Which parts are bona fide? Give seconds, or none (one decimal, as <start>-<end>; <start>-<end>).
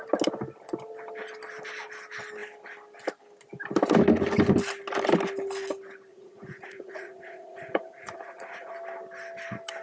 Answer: 0.0-6.1; 8.7-9.8